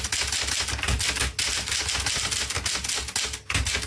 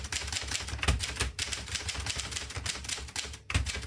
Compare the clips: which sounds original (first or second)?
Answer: first